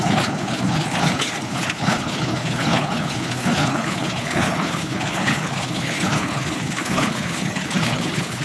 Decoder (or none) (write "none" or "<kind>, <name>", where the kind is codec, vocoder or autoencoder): codec, HILCodec